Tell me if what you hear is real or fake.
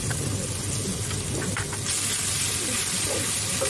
real